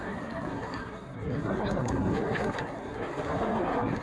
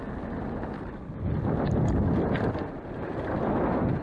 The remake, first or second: first